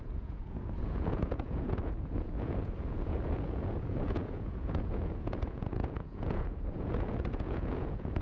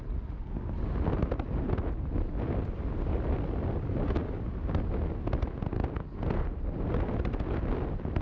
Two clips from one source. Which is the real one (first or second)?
second